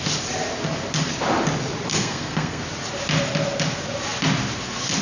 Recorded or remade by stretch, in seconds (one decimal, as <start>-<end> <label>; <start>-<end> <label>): 0.0-1.9 recorded; 1.9-2.6 remade; 2.6-5.0 recorded